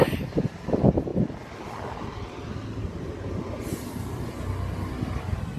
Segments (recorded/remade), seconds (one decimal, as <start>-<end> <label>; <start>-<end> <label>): 0.0-5.6 recorded